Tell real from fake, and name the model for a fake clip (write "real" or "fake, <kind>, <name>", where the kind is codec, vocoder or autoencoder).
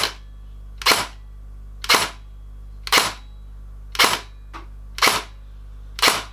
real